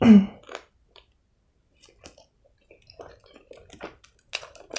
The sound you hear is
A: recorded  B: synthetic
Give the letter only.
A